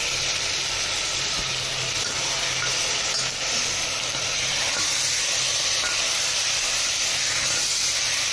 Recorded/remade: recorded